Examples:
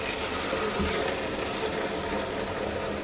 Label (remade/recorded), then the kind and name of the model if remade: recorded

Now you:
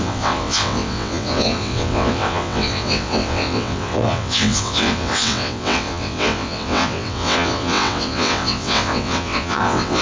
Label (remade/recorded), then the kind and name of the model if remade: remade, vocoder, WaveNeXt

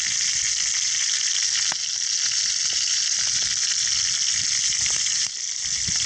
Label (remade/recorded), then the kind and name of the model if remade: recorded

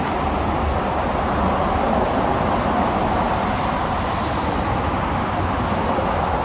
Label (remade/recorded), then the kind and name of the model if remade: recorded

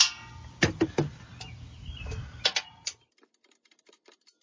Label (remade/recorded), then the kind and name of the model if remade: recorded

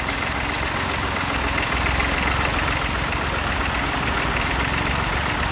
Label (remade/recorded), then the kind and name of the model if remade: recorded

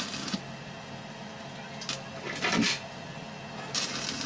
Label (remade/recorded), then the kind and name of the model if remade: recorded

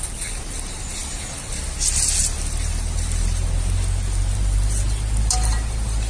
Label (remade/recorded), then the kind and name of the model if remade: recorded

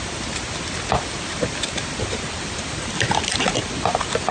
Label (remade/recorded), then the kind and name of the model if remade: recorded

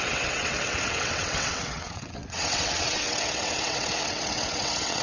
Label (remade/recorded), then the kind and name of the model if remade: remade, vocoder, WaveNeXt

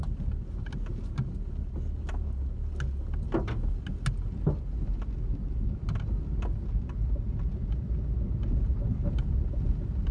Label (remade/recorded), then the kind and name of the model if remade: recorded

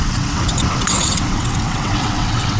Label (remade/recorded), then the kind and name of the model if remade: remade, vocoder, WaveNeXt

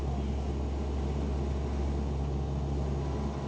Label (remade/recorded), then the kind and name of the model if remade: recorded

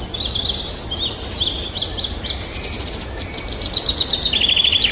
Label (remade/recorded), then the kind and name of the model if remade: recorded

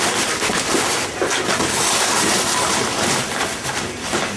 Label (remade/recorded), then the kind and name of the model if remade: recorded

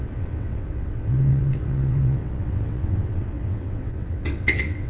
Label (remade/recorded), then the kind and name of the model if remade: remade, vocoder, WaveNeXt